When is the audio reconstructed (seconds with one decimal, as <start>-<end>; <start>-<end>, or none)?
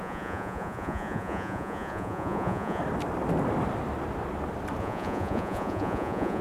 0.0-2.8; 4.8-6.4